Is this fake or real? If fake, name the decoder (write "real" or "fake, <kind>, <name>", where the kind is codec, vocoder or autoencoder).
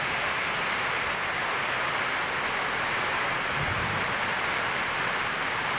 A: real